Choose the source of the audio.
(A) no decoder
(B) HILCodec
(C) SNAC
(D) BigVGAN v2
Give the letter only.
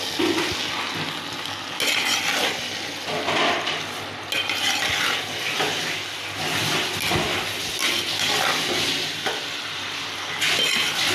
A